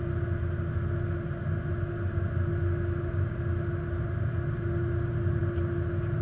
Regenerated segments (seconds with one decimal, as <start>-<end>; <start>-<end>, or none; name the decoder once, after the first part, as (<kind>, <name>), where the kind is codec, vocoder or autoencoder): none